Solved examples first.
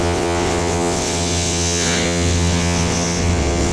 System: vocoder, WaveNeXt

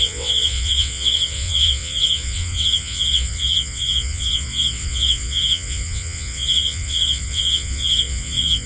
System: vocoder, WaveNeXt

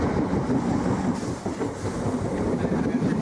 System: none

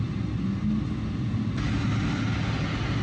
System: none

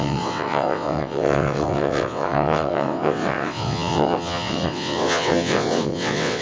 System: vocoder, WaveNeXt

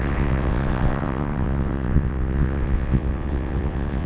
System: vocoder, WaveNeXt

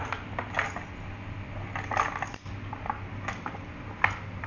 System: none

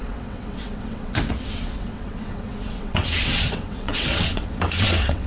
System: vocoder, WaveNeXt